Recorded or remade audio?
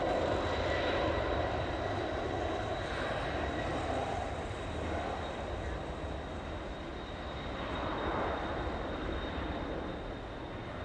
recorded